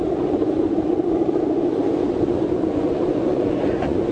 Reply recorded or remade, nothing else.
remade